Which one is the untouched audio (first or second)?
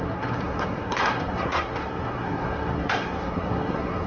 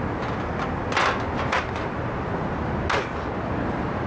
second